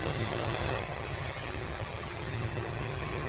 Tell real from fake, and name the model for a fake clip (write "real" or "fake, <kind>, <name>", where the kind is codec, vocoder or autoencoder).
fake, vocoder, HiFi-GAN